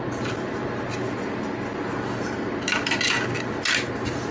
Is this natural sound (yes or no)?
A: yes